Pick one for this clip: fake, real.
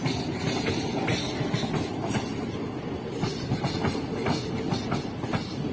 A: real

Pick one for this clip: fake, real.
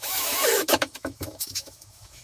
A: fake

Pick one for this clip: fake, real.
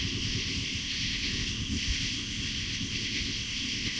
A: fake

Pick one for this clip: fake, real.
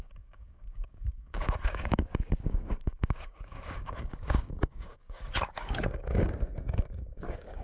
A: fake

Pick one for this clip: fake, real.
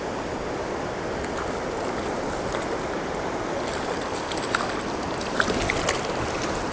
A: real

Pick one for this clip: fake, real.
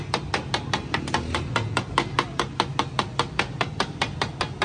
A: real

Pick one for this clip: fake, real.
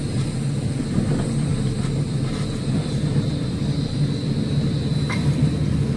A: real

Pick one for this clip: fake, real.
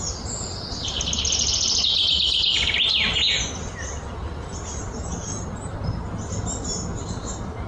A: real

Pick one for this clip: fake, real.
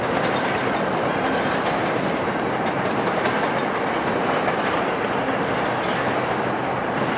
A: real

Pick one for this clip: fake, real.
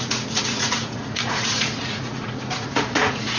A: fake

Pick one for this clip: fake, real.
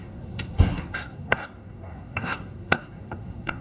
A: fake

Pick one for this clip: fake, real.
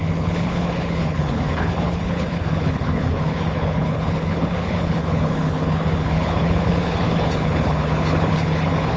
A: fake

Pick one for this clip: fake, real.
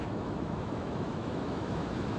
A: fake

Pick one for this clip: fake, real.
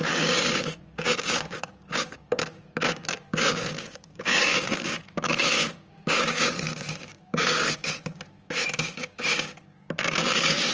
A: fake